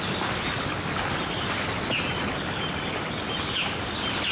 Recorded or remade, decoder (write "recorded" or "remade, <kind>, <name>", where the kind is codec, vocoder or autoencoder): recorded